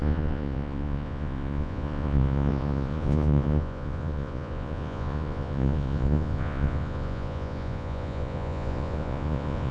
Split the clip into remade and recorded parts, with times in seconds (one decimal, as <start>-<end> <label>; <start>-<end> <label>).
0.0-9.7 remade